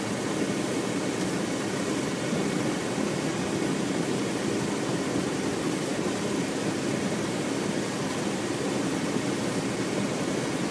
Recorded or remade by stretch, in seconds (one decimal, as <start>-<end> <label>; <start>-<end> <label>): 0.0-10.7 recorded